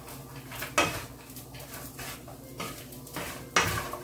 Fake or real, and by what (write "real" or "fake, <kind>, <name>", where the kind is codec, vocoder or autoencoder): real